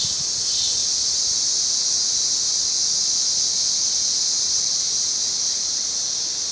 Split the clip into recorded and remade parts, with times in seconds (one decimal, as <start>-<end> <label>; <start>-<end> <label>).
0.0-6.5 recorded